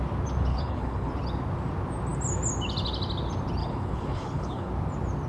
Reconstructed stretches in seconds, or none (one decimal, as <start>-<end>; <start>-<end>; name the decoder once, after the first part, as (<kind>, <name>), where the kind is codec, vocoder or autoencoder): 0.5-1.1 (codec, HILCodec); 3.6-4.7